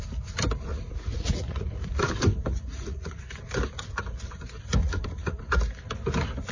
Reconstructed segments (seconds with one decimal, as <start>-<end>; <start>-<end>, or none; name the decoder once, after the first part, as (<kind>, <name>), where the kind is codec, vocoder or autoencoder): 0.7-2.1 (vocoder, Vocos); 2.7-3.2; 4.8-5.5